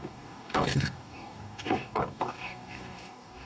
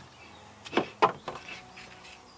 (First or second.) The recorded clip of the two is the second